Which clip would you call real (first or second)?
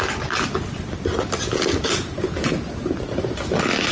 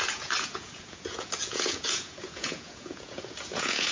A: first